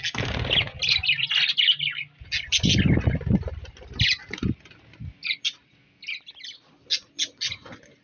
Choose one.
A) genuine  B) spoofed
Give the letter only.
A